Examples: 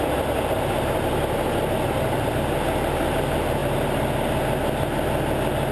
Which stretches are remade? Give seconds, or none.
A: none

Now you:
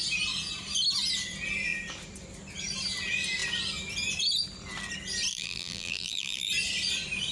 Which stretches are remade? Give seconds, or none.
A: 5.3-6.5 (vocoder, BigVGAN v2)